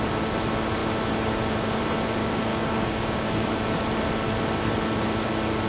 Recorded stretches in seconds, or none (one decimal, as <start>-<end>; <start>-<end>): 0.0-2.2; 3.5-5.7